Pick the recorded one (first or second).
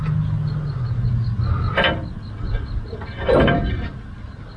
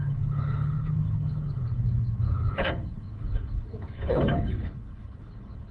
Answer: first